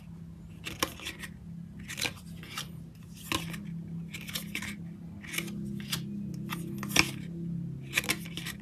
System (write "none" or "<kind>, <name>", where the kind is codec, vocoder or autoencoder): none